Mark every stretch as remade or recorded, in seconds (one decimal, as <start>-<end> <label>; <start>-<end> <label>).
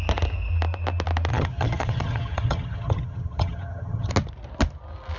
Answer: 0.0-1.3 recorded; 1.3-4.1 remade; 4.1-5.2 recorded